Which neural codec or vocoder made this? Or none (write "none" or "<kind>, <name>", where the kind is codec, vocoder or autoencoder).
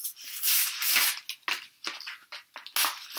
none